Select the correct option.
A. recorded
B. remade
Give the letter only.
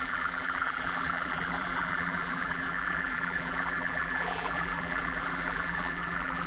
B